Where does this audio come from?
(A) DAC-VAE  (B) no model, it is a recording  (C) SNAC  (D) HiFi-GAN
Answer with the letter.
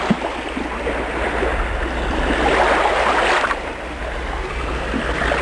B